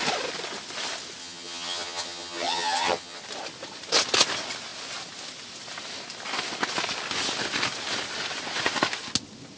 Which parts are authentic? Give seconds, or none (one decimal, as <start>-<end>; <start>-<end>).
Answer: 0.0-1.2; 3.2-9.6